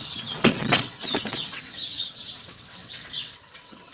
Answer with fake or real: fake